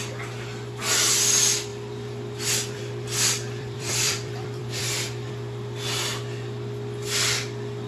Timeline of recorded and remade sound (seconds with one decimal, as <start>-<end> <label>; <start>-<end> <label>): 0.0-1.7 recorded; 1.7-5.3 remade; 5.3-7.9 recorded